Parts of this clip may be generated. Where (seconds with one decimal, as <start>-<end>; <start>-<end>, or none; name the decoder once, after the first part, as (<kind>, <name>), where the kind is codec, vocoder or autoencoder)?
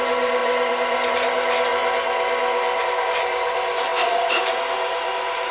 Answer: 0.0-1.7 (vocoder, BigVGAN v2); 2.8-5.5